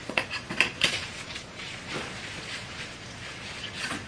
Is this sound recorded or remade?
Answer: remade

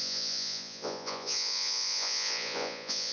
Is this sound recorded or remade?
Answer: remade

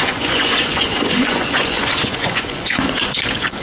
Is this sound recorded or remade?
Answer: remade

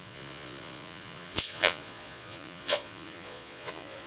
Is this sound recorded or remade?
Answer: remade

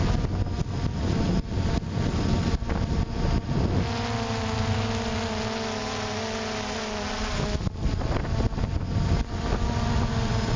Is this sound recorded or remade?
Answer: recorded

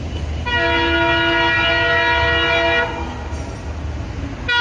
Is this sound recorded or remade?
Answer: recorded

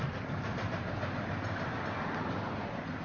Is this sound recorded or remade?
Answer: recorded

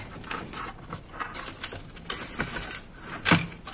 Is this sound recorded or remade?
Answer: recorded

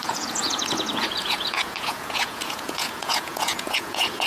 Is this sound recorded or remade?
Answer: remade